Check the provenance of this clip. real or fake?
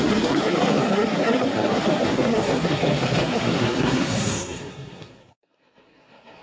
fake